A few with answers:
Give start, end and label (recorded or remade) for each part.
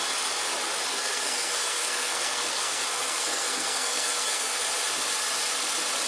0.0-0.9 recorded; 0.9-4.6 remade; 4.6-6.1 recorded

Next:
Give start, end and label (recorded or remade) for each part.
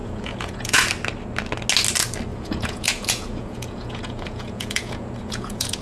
0.0-0.8 remade; 0.8-2.3 recorded; 2.3-5.8 remade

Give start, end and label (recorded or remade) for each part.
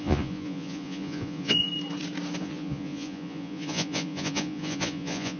0.0-1.7 remade; 1.7-2.4 recorded; 2.4-5.4 remade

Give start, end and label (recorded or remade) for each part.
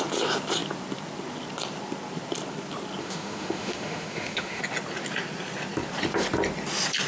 0.0-3.0 recorded; 3.0-4.6 remade; 4.6-7.1 recorded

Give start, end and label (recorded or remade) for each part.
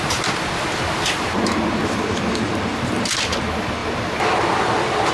0.0-5.1 recorded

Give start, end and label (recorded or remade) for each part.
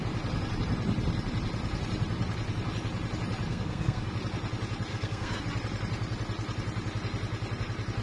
0.0-3.5 recorded; 3.5-4.1 remade; 4.1-4.9 recorded; 4.9-5.4 remade; 5.4-8.0 recorded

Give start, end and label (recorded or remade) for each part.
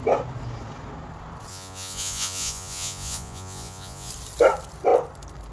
0.0-1.5 recorded; 1.5-4.1 remade; 4.1-5.5 recorded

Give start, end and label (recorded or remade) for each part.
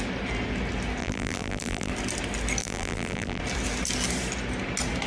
0.0-1.0 recorded; 1.0-1.9 remade; 1.9-2.6 recorded; 2.6-3.4 remade; 3.4-5.1 recorded